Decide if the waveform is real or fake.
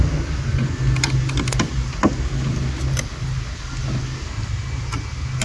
real